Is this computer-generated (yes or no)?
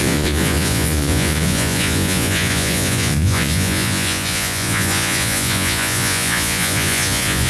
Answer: yes